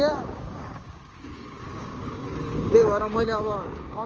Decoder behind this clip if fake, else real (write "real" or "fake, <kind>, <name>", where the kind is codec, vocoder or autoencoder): fake, codec, DAC